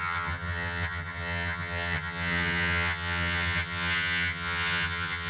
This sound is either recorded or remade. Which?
remade